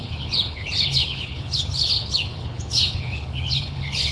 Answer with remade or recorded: remade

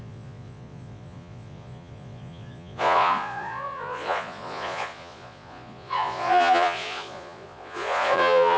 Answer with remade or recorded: remade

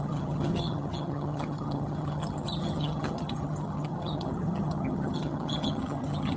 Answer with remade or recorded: remade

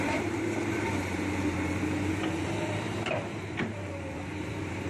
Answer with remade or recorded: remade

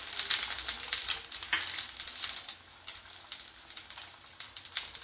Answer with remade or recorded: recorded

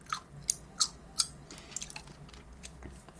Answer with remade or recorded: recorded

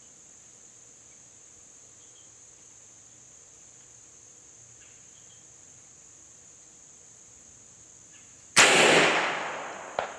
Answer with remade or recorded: recorded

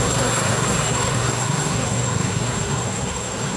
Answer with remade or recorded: remade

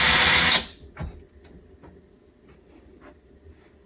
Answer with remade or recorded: recorded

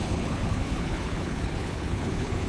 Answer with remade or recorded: remade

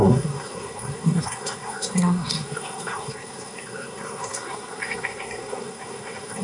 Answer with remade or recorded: remade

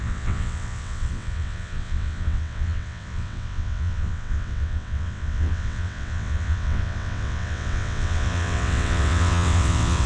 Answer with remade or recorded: remade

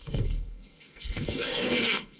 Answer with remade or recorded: remade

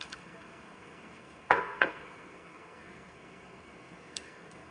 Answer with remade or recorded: remade